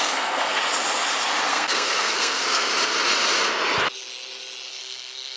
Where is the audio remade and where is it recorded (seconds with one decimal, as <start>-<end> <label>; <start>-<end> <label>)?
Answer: 0.0-0.6 remade; 0.6-1.5 recorded; 1.5-2.7 remade; 2.7-4.7 recorded; 4.7-5.4 remade